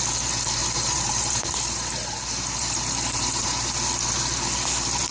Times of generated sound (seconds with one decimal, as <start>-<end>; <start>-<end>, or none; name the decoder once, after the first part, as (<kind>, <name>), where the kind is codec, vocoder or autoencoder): 0.6-3.7 (vocoder, BigVGAN v2)